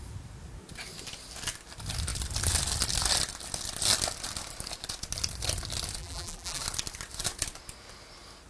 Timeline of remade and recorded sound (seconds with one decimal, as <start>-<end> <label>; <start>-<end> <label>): 0.0-6.0 recorded; 6.0-6.6 remade; 6.6-8.5 recorded